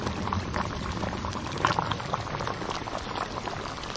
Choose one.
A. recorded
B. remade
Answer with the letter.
A